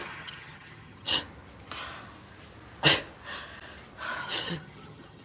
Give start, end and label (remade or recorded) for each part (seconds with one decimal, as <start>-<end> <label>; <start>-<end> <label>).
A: 0.0-1.2 remade; 1.2-4.2 recorded; 4.2-5.2 remade